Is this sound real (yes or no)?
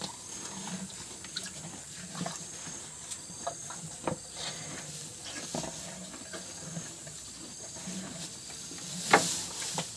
yes